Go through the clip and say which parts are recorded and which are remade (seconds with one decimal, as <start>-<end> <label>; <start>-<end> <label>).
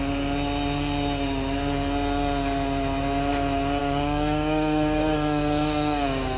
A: 0.0-3.8 recorded; 3.8-6.4 remade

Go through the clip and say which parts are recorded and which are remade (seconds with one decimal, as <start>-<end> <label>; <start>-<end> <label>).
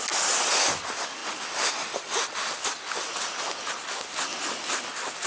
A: 0.0-5.3 recorded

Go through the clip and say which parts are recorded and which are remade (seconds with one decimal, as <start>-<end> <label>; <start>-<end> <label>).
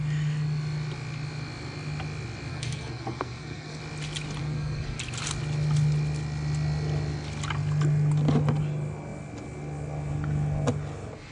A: 0.0-2.5 recorded; 2.5-3.8 remade; 3.8-4.4 recorded; 4.4-5.0 remade; 5.0-11.3 recorded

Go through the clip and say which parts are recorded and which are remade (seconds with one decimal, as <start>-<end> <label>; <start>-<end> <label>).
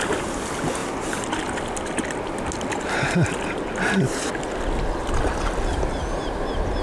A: 0.0-6.8 recorded